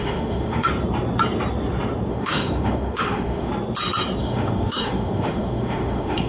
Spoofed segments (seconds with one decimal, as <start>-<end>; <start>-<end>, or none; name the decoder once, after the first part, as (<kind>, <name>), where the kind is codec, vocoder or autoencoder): 0.0-0.7 (autoencoder, DAC-VAE); 2.1-3.5; 4.2-6.3